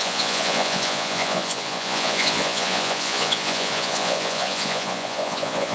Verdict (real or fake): fake